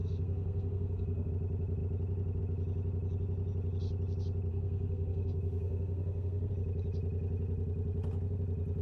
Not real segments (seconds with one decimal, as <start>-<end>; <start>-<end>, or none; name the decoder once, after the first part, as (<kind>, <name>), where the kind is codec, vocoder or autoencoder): 0.0-1.3 (codec, SNAC); 4.5-6.5